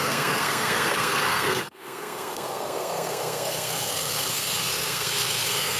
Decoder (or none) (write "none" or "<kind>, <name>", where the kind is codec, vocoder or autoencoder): codec, SNAC